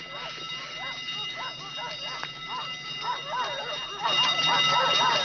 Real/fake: real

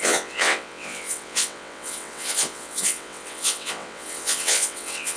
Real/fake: fake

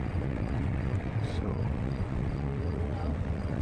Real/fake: fake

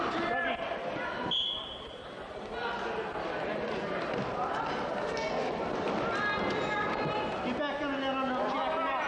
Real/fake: real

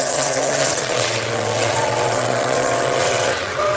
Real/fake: fake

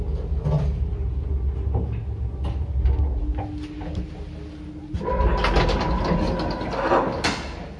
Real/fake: real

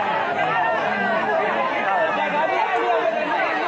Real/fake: real